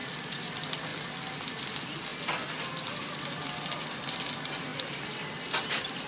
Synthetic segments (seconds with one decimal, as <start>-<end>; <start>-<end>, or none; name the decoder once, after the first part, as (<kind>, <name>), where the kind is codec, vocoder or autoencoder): 0.0-0.5 (vocoder, BigVGAN v2); 4.7-5.3